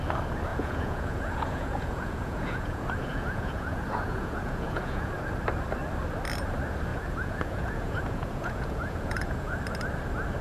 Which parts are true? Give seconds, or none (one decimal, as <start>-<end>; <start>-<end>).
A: 0.0-0.5; 5.1-6.9; 9.6-10.4